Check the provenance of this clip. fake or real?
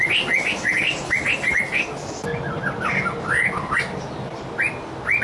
real